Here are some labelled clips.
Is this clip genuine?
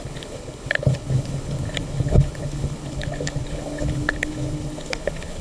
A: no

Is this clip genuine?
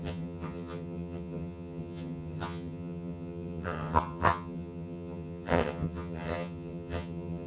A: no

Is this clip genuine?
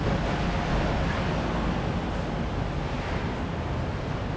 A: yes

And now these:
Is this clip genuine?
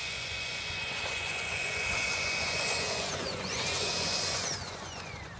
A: no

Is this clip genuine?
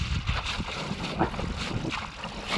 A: yes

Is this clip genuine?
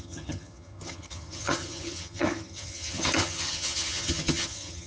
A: no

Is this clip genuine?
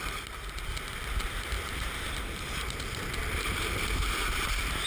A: no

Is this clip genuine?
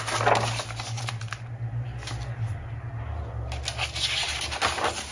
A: yes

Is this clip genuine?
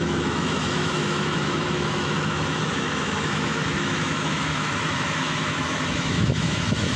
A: no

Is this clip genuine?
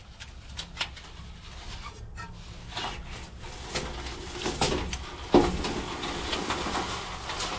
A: yes